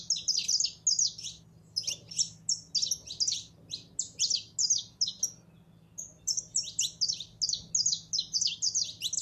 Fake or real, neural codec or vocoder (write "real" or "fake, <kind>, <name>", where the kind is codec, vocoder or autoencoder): real